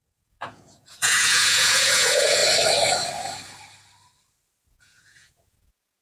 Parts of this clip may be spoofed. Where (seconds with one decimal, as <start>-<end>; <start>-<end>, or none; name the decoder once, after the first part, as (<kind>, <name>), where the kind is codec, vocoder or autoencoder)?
0.0-2.4 (vocoder, Vocos); 4.7-6.0